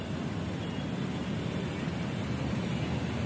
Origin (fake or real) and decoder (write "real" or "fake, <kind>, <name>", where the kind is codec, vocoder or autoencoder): real